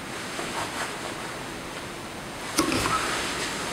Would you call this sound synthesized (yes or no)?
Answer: no